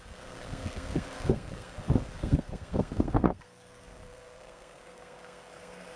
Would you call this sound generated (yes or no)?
yes